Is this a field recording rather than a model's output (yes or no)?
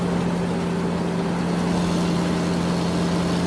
yes